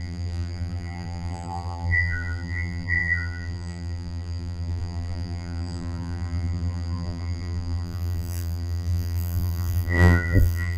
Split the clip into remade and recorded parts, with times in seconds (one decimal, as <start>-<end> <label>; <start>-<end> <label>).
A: 0.0-10.8 remade